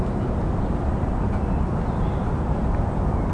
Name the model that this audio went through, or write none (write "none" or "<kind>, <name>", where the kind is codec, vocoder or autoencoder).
none